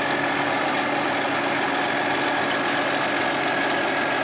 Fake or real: real